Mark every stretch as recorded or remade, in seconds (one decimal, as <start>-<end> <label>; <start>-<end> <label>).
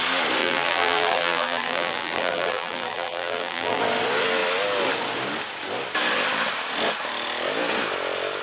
0.0-0.4 recorded; 0.4-3.8 remade; 3.8-8.4 recorded